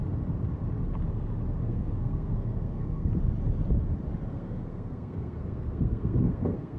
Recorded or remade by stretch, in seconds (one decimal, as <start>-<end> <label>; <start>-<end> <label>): 0.0-1.6 recorded; 1.6-3.1 remade; 3.1-4.3 recorded; 4.3-6.8 remade